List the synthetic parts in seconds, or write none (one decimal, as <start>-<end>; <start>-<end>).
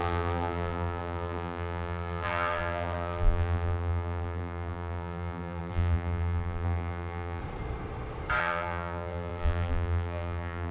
0.0-7.4; 8.4-10.7